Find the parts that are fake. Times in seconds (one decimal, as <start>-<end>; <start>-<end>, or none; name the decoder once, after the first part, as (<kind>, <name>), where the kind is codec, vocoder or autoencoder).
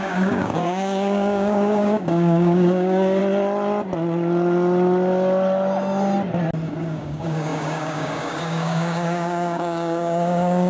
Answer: 0.0-3.2 (codec, DAC); 6.8-10.7